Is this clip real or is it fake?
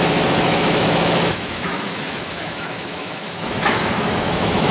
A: fake